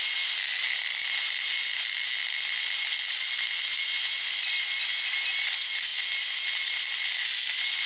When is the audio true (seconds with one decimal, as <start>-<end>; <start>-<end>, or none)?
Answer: 0.0-7.9